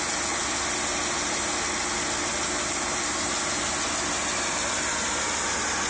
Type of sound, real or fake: real